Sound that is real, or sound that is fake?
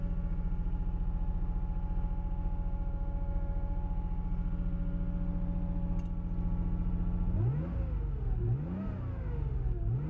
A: real